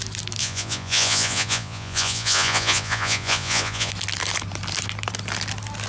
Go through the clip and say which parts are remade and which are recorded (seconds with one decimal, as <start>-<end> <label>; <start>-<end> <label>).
0.0-0.4 recorded; 0.4-3.9 remade; 3.9-5.9 recorded